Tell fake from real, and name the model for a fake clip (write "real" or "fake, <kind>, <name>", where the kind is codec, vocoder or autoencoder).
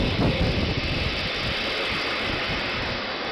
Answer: real